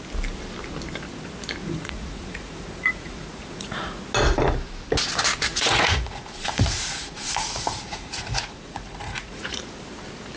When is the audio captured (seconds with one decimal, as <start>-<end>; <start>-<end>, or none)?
0.0-1.6; 4.0-5.5; 9.6-10.4